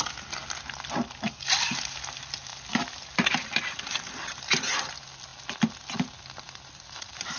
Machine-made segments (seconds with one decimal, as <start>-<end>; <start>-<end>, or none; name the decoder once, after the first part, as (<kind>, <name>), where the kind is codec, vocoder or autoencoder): none